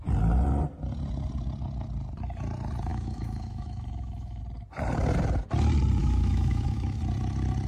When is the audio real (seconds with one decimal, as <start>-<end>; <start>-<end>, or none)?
0.0-2.9; 4.4-6.0; 7.0-7.7